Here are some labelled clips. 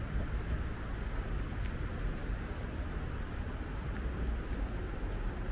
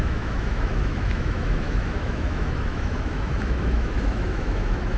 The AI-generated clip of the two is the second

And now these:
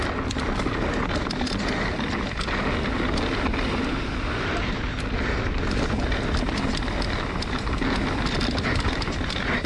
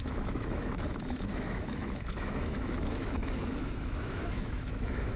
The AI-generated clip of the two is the second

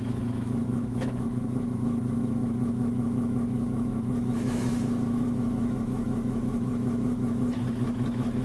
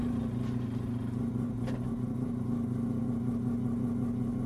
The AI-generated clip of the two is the first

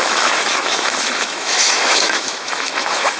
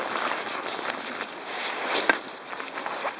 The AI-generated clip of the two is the first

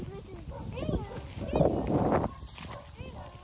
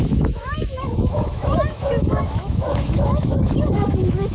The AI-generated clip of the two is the second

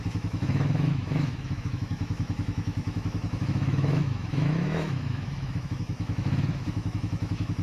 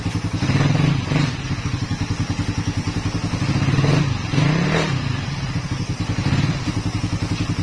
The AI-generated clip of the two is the first